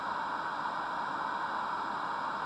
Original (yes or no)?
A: yes